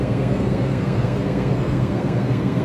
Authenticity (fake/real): fake